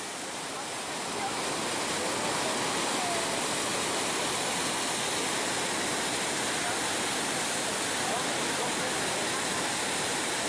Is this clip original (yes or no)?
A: yes